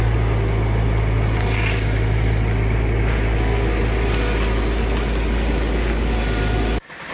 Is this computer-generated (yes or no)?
no